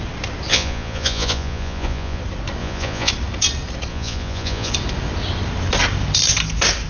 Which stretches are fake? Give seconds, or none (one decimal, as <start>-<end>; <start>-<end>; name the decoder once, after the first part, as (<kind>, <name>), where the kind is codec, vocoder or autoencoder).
0.5-2.2 (vocoder, Vocos); 2.6-3.1; 3.9-4.7